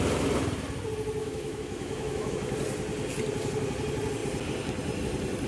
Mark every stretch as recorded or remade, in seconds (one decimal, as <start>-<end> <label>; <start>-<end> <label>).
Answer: 0.0-1.2 recorded; 1.2-2.3 remade; 2.3-5.5 recorded